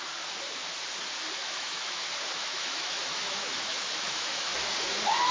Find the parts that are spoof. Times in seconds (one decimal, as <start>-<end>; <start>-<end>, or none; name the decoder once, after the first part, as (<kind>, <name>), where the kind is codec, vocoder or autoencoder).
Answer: 1.4-2.0 (autoencoder, DAC-VAE); 2.4-4.6